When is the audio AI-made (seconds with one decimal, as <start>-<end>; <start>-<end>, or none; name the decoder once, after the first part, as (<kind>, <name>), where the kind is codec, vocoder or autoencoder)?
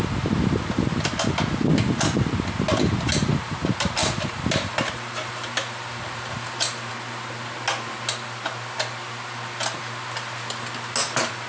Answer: 4.0-6.9 (vocoder, BigVGAN v2)